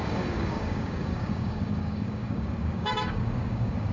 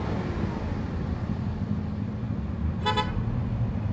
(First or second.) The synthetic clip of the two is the first